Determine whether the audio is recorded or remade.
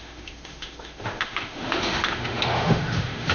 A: remade